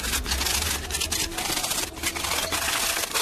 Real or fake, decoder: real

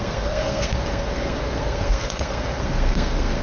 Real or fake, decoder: fake, codec, SNAC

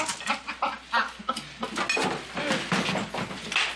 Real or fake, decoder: real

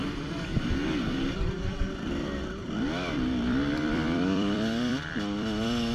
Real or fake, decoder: fake, vocoder, BigVGAN v2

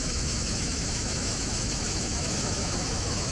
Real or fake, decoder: fake, autoencoder, DAC-VAE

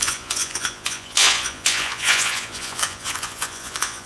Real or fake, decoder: fake, vocoder, Vocos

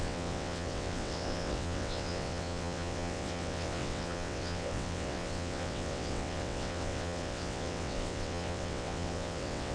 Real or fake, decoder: fake, vocoder, WaveNeXt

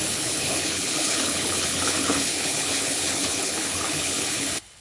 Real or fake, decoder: fake, codec, HILCodec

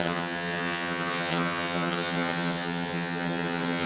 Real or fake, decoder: fake, vocoder, HiFi-GAN